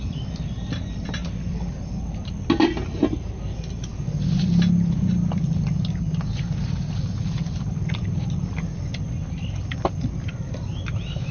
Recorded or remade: recorded